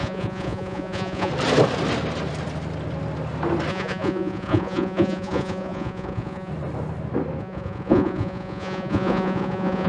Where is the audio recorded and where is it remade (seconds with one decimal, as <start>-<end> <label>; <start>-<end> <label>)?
0.0-1.3 remade; 1.3-3.7 recorded; 3.7-6.5 remade; 6.5-7.4 recorded; 7.4-9.9 remade